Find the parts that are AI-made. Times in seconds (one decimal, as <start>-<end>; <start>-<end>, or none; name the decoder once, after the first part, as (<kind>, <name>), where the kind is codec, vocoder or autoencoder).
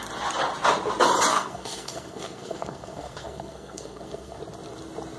1.3-4.4 (codec, SNAC)